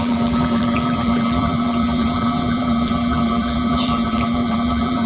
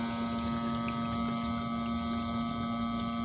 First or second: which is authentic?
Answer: second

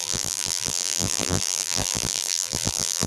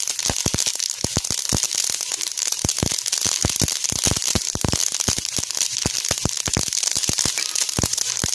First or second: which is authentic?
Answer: second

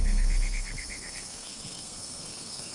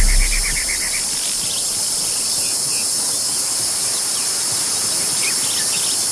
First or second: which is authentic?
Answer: second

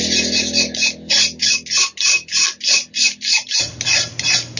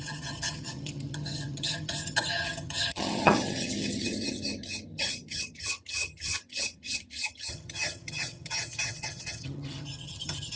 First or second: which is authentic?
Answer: first